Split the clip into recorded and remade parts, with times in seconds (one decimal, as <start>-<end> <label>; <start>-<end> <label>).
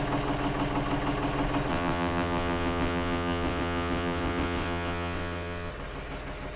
0.0-1.7 recorded; 1.7-5.7 remade; 5.7-6.6 recorded